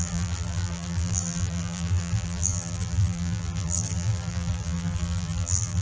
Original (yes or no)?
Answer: no